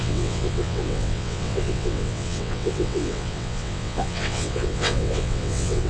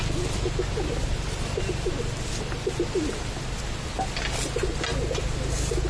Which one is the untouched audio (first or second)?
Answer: second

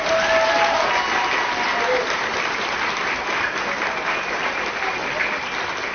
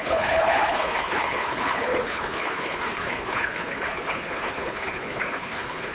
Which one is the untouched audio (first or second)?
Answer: first